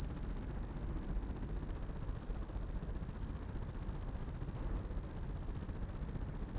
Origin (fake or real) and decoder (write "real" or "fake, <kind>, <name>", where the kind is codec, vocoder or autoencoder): real